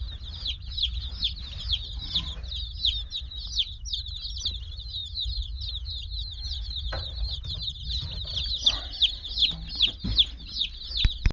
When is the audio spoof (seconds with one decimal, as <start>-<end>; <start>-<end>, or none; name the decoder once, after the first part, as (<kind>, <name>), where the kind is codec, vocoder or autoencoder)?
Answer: none

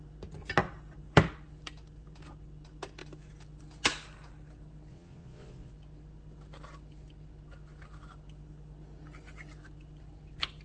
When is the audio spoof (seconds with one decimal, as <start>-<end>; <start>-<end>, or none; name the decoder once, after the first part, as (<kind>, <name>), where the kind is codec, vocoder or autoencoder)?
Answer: 4.9-5.7 (vocoder, Vocos)

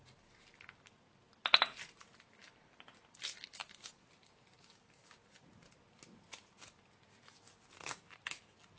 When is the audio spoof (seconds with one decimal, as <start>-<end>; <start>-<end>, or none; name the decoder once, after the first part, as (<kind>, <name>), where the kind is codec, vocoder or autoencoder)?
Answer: none

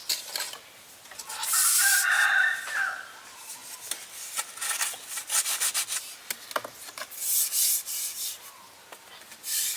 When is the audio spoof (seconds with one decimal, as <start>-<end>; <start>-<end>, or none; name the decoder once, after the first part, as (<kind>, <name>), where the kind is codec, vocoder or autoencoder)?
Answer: none

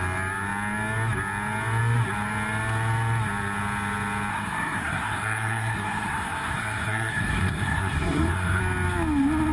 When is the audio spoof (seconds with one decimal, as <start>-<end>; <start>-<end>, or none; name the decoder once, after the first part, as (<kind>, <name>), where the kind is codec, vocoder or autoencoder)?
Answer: 4.3-8.6 (codec, SNAC)

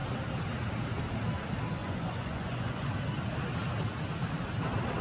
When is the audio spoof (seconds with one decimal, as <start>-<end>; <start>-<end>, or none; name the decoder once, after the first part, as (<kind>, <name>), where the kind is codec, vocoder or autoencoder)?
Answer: 1.8-2.9 (vocoder, Vocos)